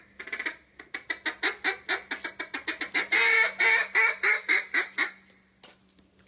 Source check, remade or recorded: recorded